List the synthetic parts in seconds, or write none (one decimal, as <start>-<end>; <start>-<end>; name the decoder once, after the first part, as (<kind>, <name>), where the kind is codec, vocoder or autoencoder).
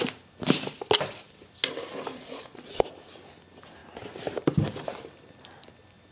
2.1-2.7 (vocoder, Vocos)